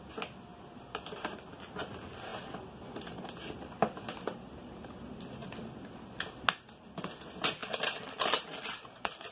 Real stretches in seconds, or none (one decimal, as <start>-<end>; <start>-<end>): 0.0-0.5; 1.0-7.6; 8.6-9.3